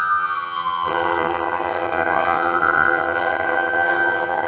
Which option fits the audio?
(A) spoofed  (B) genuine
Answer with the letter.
A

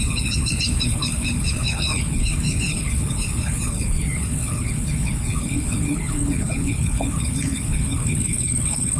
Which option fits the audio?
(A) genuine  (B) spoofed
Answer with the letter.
B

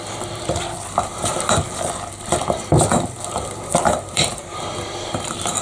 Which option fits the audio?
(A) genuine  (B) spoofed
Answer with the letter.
B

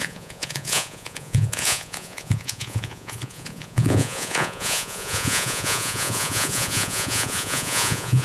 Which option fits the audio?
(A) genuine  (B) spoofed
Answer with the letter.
B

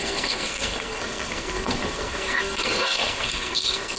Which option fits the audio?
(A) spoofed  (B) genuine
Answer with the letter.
A